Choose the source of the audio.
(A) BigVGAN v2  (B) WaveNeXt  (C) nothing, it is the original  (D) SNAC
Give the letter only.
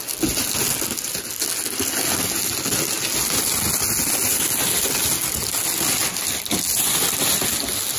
C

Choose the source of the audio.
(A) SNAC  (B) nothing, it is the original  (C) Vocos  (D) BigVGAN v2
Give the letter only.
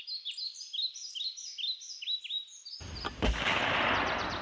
B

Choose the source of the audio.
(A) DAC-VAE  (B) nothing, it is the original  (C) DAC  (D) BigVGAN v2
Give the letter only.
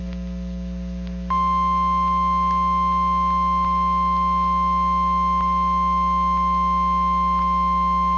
B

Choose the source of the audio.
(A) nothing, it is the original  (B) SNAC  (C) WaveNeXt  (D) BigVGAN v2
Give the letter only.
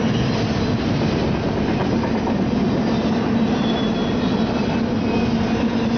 A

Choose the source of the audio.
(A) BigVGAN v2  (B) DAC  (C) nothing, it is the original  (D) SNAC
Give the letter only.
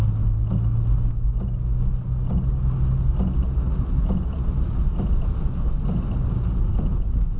C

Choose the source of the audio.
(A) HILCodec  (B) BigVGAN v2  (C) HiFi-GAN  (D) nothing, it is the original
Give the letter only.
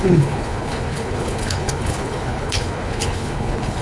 A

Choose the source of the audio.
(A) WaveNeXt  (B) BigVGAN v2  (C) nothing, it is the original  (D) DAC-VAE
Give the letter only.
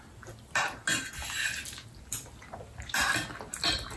C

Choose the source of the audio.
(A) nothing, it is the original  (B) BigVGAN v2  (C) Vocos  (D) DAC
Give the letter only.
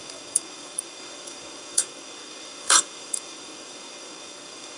D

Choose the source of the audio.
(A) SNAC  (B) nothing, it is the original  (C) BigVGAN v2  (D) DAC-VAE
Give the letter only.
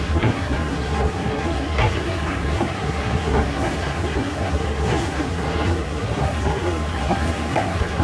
A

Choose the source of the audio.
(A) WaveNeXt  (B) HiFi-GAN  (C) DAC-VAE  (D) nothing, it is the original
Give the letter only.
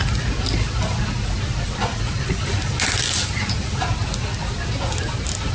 D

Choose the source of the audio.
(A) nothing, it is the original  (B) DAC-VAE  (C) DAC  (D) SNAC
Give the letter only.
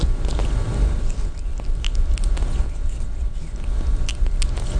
A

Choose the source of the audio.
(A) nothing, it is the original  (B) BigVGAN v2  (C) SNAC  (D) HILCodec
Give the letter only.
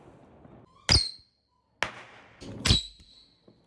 A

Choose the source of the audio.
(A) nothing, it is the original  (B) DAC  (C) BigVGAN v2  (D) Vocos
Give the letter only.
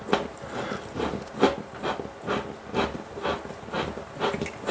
A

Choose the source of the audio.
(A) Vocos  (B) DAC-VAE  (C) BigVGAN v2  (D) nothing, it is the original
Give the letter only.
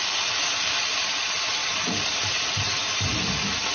C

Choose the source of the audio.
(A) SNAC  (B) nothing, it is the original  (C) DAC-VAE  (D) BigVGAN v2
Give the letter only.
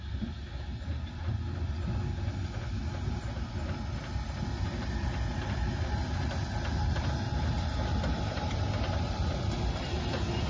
B